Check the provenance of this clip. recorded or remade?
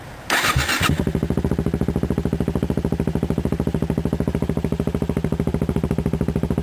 recorded